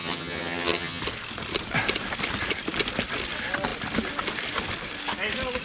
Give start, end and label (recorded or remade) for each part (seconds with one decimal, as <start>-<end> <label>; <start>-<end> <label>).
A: 0.0-1.0 remade; 1.0-5.6 recorded